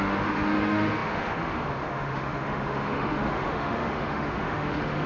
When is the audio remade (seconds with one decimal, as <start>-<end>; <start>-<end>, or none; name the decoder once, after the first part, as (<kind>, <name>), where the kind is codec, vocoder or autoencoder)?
0.0-5.1 (autoencoder, DAC-VAE)